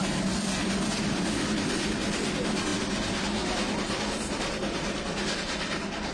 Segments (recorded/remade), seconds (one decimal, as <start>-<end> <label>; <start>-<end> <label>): 0.0-6.1 recorded